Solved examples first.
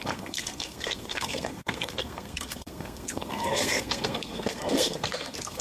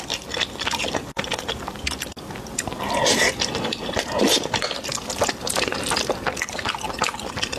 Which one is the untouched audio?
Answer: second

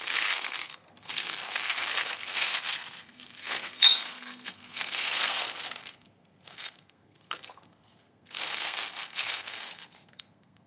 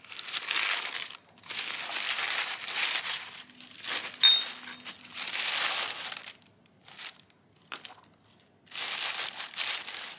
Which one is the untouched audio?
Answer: second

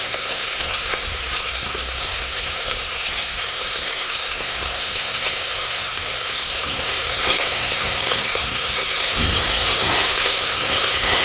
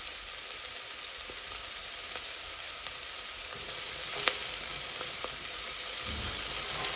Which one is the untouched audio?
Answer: second